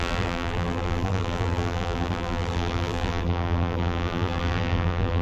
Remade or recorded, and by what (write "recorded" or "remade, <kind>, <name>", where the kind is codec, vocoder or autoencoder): remade, vocoder, BigVGAN v2